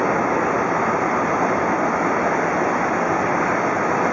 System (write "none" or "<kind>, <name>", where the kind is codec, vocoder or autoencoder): none